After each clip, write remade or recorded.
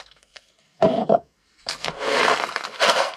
remade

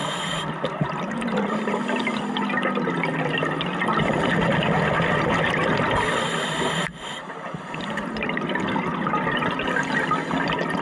recorded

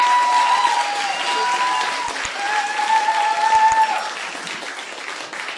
recorded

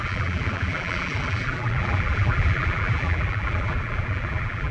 remade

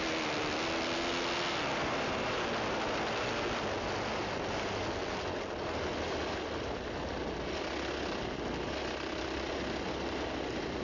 recorded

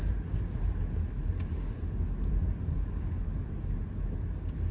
recorded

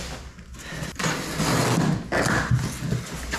recorded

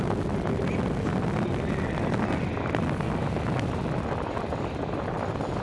recorded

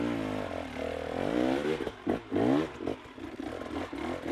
recorded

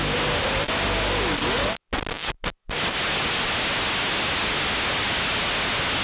recorded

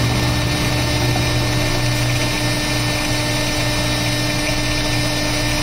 recorded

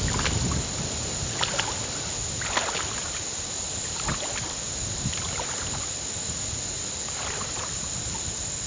recorded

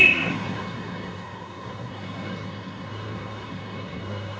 remade